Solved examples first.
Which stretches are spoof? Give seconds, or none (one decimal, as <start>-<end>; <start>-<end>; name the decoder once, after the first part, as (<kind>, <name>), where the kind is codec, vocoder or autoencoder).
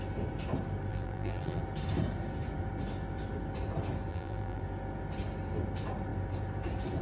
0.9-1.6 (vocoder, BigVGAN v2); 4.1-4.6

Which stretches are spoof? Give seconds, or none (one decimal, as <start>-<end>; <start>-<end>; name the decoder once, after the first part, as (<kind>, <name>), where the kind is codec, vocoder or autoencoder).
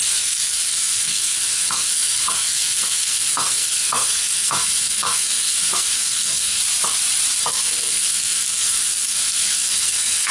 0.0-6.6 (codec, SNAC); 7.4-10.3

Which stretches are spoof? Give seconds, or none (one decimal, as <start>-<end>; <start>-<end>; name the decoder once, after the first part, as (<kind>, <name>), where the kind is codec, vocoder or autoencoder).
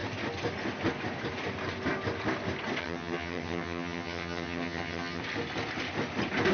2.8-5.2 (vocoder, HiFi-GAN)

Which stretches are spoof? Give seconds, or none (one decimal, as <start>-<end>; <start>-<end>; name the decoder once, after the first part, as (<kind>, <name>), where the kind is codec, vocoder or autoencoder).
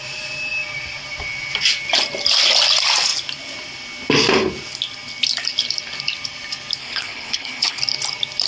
6.8-7.8 (codec, HILCodec)